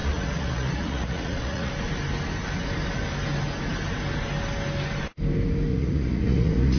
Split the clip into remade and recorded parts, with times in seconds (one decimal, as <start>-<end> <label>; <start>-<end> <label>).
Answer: 0.0-1.7 remade; 1.7-5.7 recorded; 5.7-6.8 remade